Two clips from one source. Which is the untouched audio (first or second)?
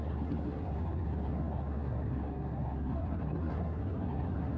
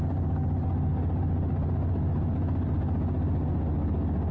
second